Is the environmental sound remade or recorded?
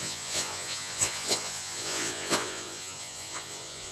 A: remade